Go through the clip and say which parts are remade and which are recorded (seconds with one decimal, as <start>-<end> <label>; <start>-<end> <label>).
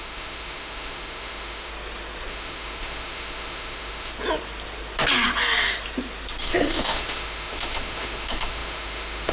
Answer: 0.0-1.7 remade; 1.7-2.3 recorded; 2.3-4.1 remade; 4.1-6.4 recorded; 6.4-9.3 remade